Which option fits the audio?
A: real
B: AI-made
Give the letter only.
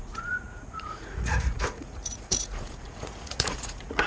B